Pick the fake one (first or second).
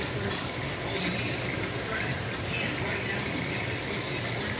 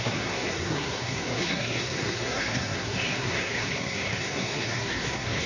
second